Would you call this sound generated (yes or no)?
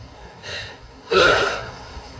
yes